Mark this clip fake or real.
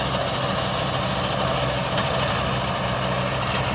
real